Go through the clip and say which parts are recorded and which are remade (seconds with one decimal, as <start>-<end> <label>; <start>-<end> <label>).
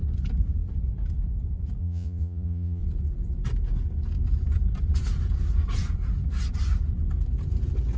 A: 0.0-1.8 recorded; 1.8-2.8 remade; 2.8-8.0 recorded